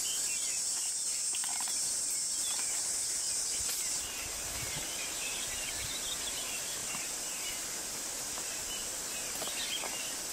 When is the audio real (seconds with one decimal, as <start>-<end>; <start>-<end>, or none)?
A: 0.0-1.4; 2.1-6.8; 7.4-10.3